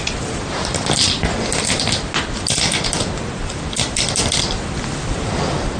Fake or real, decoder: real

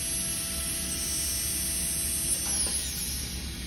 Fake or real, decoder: real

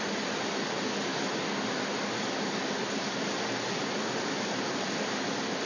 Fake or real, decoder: real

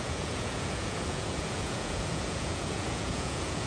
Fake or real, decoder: fake, vocoder, Vocos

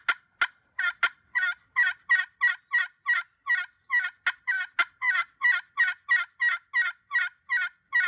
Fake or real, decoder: real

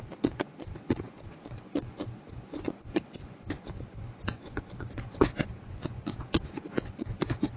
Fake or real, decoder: fake, vocoder, Vocos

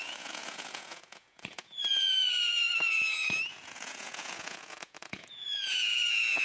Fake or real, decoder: fake, vocoder, Vocos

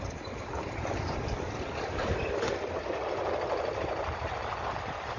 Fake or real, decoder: real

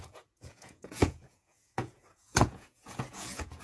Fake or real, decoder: fake, vocoder, Vocos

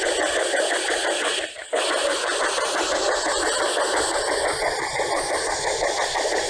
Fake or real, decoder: real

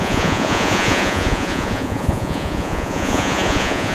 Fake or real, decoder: fake, vocoder, Vocos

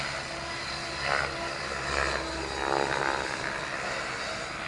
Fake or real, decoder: real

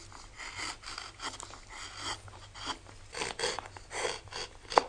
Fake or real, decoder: real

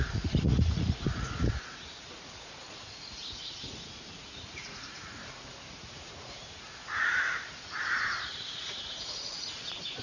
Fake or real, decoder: fake, vocoder, Vocos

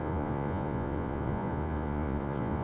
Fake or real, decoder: fake, vocoder, Vocos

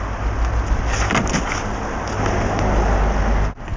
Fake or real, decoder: real